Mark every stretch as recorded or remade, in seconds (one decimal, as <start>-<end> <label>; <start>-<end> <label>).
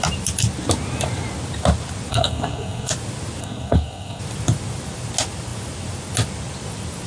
0.0-2.1 recorded; 2.1-2.9 remade; 2.9-3.4 recorded; 3.4-4.2 remade; 4.2-7.1 recorded